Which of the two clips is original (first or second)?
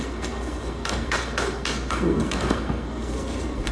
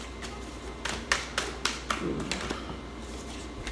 second